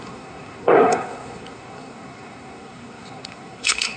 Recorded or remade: remade